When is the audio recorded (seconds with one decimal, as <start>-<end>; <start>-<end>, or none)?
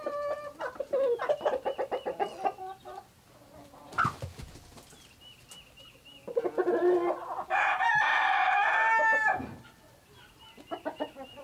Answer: 0.0-11.4